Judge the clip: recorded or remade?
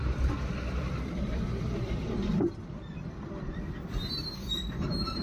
remade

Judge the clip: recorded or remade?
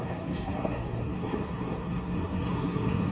remade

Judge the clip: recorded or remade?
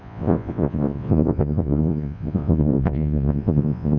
remade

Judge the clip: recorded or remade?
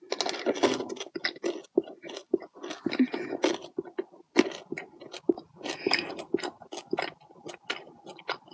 recorded